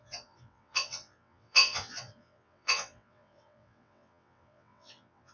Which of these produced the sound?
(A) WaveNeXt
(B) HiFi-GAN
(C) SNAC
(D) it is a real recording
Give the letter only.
A